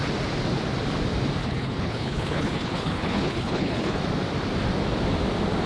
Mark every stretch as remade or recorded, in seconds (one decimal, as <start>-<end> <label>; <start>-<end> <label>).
0.0-1.4 recorded; 1.4-4.0 remade; 4.0-5.7 recorded